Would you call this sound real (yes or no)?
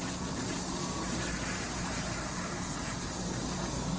yes